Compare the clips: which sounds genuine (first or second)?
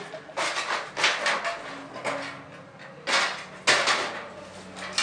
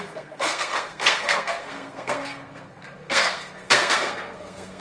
first